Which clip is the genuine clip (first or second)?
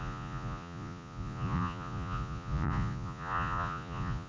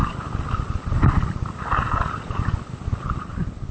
second